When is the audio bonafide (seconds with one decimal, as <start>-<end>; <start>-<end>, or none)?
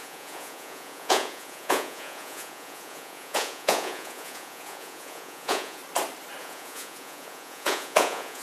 5.8-6.4